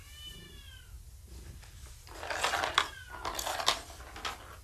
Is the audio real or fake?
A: real